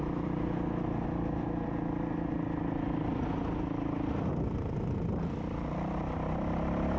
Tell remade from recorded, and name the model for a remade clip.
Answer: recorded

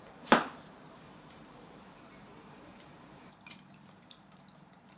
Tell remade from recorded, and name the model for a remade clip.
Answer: remade, vocoder, BigVGAN v2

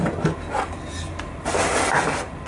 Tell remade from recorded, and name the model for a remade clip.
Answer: recorded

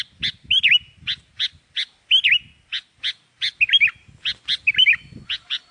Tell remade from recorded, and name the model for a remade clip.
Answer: recorded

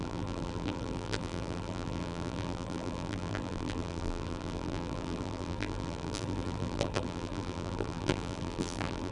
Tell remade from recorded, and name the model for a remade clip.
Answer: remade, vocoder, BigVGAN v2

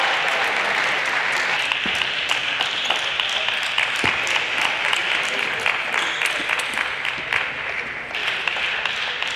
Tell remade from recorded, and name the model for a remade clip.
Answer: recorded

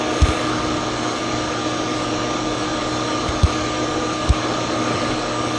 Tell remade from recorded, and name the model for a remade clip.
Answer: remade, codec, DAC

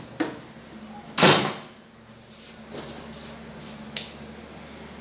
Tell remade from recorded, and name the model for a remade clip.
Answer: recorded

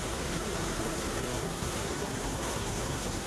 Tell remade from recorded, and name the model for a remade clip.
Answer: remade, codec, SNAC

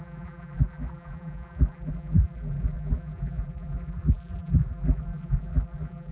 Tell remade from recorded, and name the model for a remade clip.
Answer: remade, vocoder, BigVGAN v2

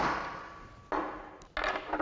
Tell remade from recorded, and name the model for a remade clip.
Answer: recorded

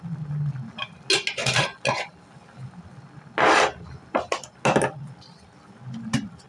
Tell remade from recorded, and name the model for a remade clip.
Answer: recorded